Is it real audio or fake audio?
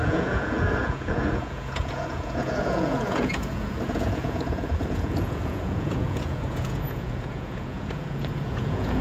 fake